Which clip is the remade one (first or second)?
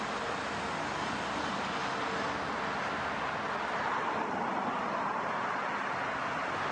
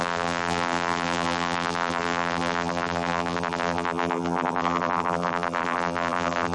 second